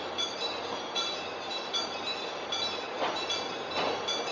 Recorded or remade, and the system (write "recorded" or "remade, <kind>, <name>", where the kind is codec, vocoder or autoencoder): recorded